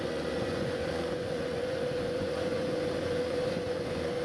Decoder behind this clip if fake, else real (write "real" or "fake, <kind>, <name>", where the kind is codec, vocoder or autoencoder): fake, vocoder, Vocos